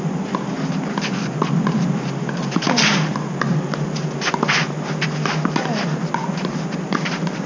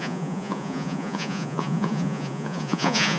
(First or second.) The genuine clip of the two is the first